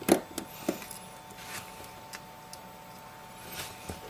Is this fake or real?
real